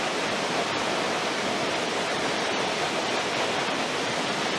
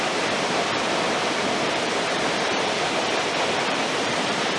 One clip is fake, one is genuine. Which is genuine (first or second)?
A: first